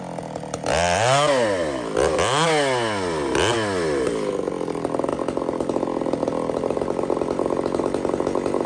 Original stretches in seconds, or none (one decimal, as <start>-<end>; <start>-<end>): 0.0-8.7